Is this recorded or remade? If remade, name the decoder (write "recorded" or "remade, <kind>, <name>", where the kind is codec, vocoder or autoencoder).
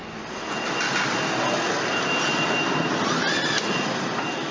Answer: recorded